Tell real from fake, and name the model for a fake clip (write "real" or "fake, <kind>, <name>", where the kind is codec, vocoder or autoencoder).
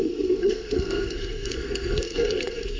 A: fake, codec, SNAC